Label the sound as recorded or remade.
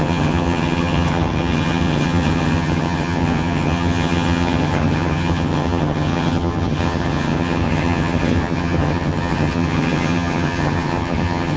remade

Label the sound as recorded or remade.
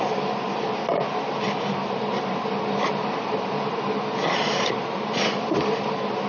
recorded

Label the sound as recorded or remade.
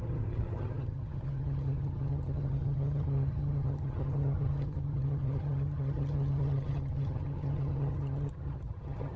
remade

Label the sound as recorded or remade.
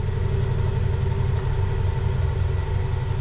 recorded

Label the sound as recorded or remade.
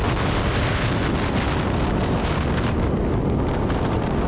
recorded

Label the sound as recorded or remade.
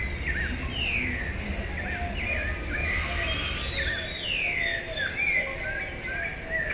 recorded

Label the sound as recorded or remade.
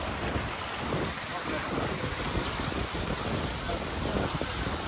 recorded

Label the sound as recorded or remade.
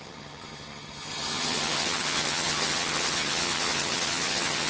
remade